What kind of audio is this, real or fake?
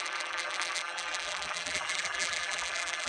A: fake